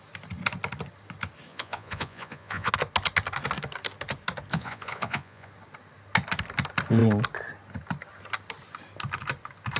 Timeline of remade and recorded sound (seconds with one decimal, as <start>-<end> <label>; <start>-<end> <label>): 0.0-1.5 recorded; 1.5-2.7 remade; 2.7-4.5 recorded; 4.5-5.5 remade; 5.5-9.8 recorded